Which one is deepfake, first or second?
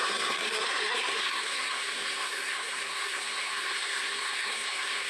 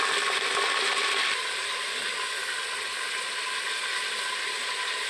first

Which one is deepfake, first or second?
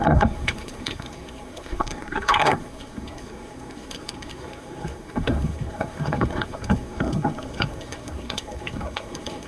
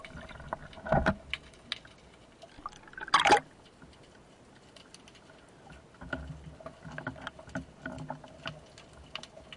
first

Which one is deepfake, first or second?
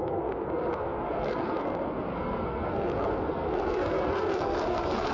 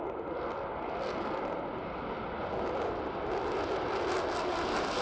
first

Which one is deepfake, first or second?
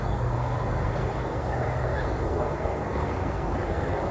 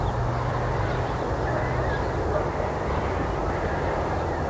first